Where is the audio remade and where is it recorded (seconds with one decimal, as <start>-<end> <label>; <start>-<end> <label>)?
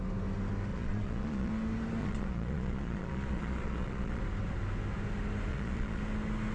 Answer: 0.0-0.7 recorded; 0.7-1.5 remade; 1.5-2.0 recorded; 2.0-4.2 remade; 4.2-5.5 recorded; 5.5-6.0 remade; 6.0-6.5 recorded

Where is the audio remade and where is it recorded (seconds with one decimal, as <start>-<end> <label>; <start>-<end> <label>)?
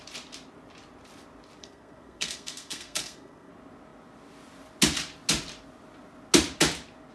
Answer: 0.0-1.6 recorded; 1.6-3.5 remade; 3.5-7.1 recorded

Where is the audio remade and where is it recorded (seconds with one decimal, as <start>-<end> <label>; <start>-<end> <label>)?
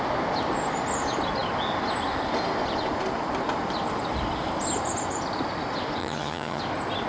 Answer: 0.0-6.0 recorded; 6.0-6.6 remade; 6.6-7.1 recorded